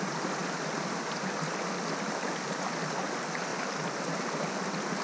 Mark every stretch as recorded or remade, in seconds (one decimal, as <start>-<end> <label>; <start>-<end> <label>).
0.0-3.5 recorded; 3.5-4.5 remade; 4.5-5.0 recorded